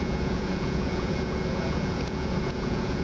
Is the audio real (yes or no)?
no